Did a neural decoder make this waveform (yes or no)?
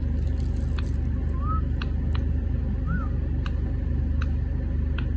no